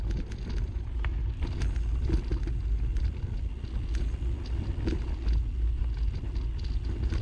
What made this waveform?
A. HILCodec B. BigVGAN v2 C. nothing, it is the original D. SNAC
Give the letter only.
C